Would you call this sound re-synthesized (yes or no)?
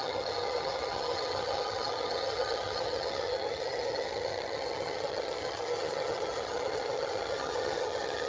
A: yes